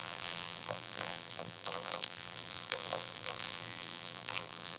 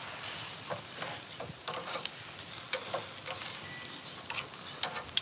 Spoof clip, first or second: first